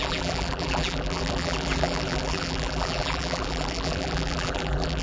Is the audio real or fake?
fake